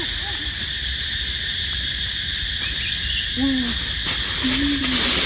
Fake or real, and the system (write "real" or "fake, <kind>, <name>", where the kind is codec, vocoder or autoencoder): real